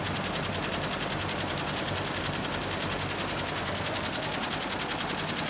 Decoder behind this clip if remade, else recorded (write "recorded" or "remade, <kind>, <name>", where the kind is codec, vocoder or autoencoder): recorded